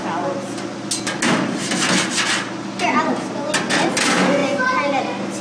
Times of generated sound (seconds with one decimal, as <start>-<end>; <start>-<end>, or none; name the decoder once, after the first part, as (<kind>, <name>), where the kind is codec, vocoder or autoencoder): none